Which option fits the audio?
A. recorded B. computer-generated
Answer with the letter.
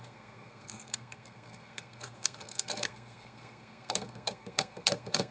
B